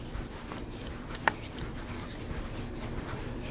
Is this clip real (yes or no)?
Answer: no